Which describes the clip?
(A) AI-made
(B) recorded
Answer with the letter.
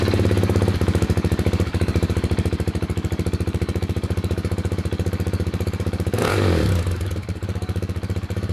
A